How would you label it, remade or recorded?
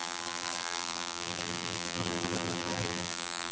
remade